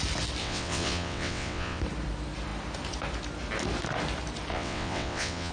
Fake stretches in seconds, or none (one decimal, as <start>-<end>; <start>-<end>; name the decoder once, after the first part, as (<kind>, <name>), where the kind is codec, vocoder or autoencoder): 0.4-1.8 (vocoder, WaveNeXt); 4.5-5.5